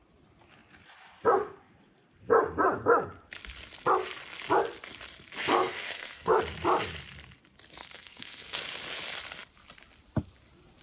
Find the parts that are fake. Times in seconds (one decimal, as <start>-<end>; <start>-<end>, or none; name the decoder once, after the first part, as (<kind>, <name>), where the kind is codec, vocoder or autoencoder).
5.5-6.4 (codec, SNAC); 7.8-8.6